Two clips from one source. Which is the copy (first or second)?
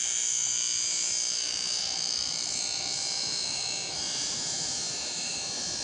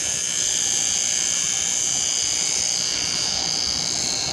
first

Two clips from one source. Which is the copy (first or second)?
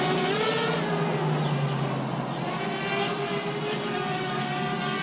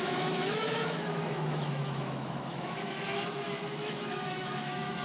second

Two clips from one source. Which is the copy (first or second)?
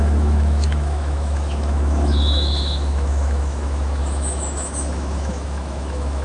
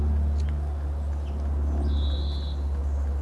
first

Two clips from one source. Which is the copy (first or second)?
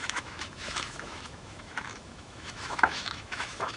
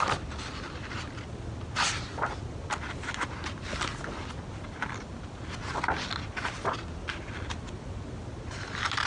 first